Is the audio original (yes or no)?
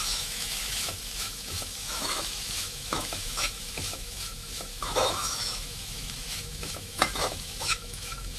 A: no